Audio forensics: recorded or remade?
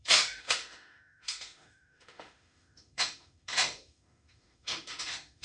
remade